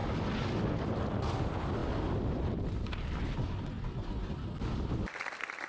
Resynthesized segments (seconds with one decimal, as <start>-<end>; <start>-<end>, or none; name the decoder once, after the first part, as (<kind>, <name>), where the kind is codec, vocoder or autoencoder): 0.0-1.1 (vocoder, BigVGAN v2); 1.8-5.2